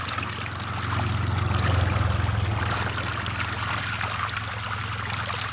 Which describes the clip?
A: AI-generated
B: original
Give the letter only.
B